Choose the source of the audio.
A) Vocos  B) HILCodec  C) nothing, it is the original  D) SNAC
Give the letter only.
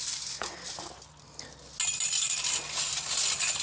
C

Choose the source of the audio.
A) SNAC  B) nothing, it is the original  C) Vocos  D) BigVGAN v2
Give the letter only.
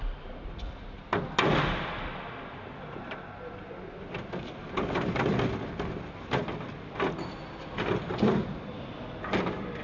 B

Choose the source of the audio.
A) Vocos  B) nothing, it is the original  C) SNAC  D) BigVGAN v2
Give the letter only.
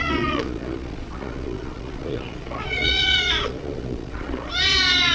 A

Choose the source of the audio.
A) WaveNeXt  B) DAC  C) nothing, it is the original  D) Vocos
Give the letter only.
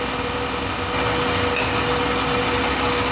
C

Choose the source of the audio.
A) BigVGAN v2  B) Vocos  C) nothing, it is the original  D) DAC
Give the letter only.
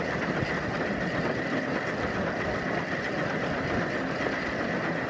C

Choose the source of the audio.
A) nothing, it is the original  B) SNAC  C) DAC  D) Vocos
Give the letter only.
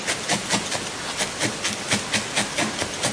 A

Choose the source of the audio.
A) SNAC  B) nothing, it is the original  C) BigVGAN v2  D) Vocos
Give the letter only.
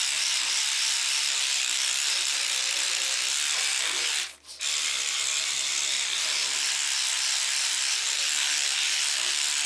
B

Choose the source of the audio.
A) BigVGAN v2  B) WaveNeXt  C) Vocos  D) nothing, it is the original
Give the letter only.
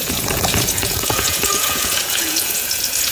C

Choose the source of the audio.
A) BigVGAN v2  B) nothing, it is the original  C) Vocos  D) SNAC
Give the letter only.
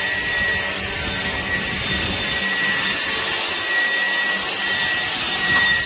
B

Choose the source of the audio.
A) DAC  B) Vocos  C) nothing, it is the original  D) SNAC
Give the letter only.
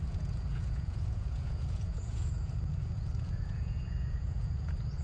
B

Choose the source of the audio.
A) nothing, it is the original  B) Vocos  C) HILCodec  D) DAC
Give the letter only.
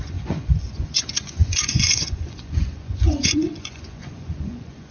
B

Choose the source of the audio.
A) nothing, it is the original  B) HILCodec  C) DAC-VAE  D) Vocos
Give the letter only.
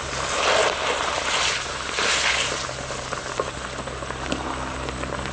A